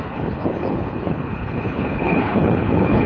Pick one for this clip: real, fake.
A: fake